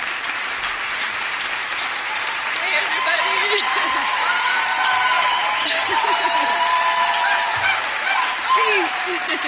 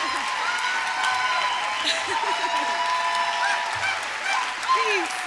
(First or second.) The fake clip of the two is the first